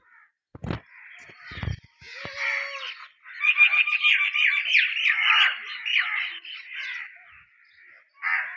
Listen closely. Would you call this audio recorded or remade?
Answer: recorded